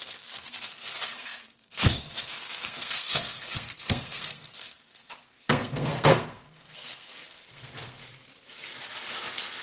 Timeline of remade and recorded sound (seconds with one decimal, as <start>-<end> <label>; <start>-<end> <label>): 0.0-8.0 remade; 8.0-9.6 recorded